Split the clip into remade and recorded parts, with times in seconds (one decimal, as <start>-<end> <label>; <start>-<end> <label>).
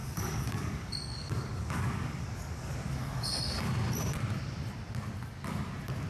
0.0-3.7 remade; 3.7-6.1 recorded